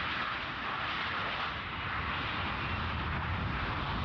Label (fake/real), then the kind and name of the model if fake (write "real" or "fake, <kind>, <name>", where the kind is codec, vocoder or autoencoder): real